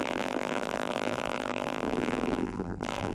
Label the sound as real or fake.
fake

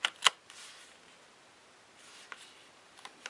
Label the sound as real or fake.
real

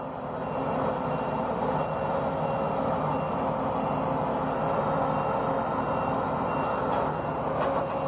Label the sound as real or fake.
real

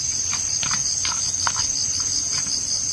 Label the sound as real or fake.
real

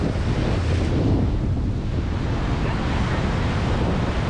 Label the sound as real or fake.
real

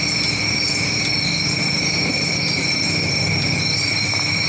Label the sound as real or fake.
real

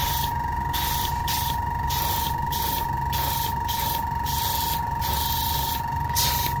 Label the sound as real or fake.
real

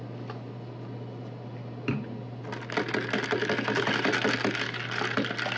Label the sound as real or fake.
real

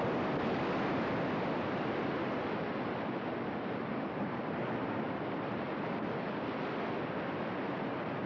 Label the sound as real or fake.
fake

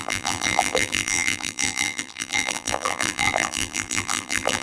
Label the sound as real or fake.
fake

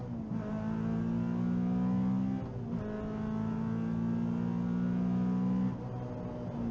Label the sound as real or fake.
real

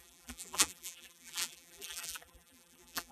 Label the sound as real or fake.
fake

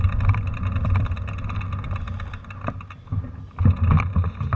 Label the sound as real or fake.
real